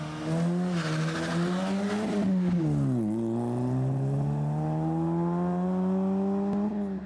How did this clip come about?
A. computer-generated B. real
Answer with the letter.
B